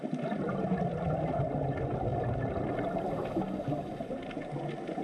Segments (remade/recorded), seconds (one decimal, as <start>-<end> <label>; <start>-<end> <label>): 0.0-5.0 recorded